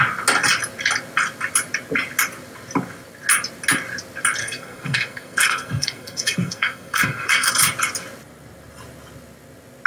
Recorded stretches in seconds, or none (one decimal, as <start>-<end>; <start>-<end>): 0.0-4.4; 7.5-9.9